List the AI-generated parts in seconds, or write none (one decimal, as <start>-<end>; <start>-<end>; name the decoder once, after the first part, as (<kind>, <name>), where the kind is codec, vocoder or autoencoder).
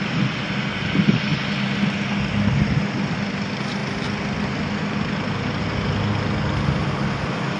1.3-3.0 (vocoder, BigVGAN v2)